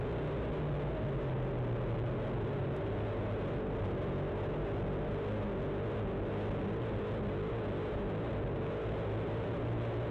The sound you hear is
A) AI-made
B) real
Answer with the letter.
B